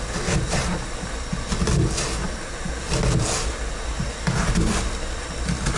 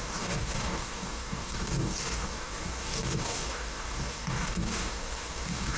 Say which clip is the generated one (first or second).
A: second